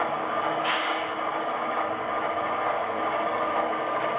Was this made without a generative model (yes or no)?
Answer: no